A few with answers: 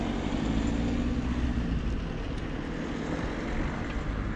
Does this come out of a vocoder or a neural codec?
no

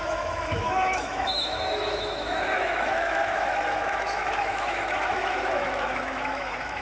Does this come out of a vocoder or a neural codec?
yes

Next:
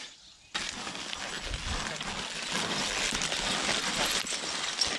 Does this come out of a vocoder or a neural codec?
no